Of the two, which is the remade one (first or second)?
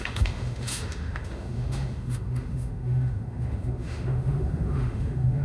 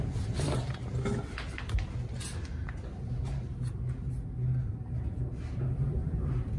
first